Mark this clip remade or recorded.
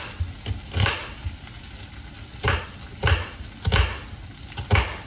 recorded